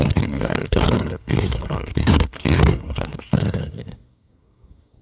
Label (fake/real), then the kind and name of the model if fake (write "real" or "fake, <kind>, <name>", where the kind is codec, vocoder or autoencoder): fake, codec, SNAC